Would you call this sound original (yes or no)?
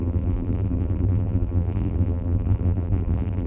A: no